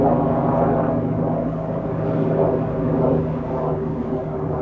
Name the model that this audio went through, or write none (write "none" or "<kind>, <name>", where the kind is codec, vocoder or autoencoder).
codec, DAC